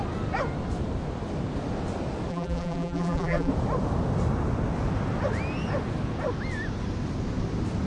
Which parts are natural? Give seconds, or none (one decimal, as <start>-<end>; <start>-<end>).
0.0-2.3; 3.5-7.9